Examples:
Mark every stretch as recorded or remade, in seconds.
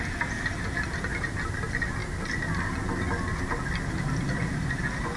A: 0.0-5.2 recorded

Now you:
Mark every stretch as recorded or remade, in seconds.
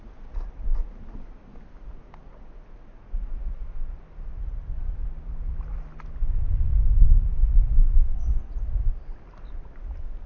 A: 0.0-8.0 recorded; 8.0-8.5 remade; 8.5-10.3 recorded